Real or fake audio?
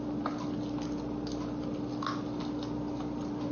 real